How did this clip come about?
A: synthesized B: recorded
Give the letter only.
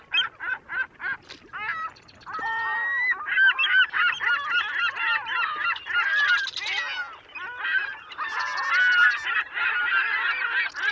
B